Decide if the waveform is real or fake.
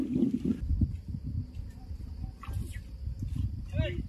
real